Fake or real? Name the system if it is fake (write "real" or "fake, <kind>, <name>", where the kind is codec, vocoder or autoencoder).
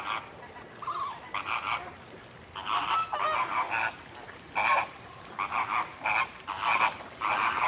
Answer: real